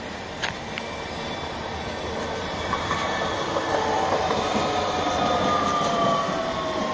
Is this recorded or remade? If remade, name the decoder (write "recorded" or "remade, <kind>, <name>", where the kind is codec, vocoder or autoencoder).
recorded